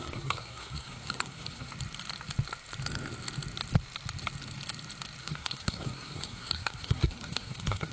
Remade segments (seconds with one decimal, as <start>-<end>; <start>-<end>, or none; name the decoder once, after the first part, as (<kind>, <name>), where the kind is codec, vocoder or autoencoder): 0.0-1.7 (codec, SNAC); 5.2-7.9